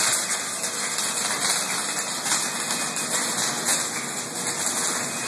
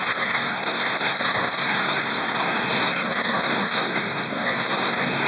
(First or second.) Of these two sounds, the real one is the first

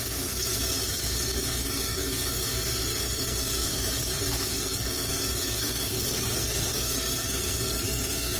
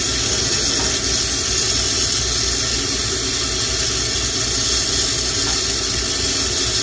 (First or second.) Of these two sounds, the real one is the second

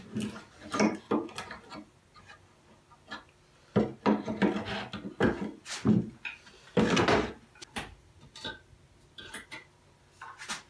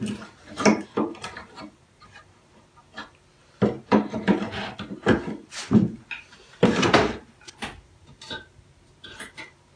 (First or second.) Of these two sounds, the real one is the first